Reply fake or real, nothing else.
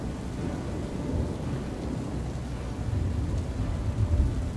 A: real